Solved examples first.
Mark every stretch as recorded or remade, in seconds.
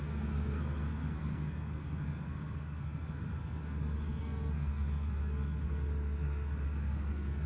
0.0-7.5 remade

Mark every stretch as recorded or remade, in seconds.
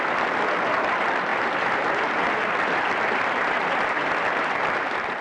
0.0-5.2 recorded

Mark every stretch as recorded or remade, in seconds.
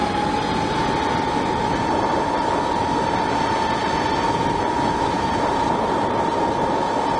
0.0-7.2 recorded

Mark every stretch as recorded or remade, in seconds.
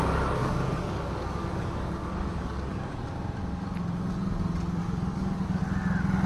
0.0-0.4 recorded; 0.4-3.0 remade; 3.0-4.8 recorded; 4.8-5.6 remade; 5.6-6.3 recorded